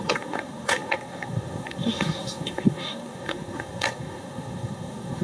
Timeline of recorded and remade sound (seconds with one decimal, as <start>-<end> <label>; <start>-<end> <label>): 0.0-5.2 remade